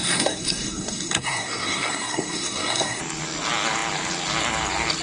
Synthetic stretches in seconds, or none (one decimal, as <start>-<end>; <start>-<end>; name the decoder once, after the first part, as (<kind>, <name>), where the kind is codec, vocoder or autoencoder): 0.0-3.0 (codec, SNAC)